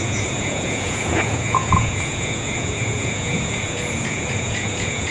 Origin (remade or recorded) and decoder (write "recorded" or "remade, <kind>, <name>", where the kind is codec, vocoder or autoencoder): remade, vocoder, Vocos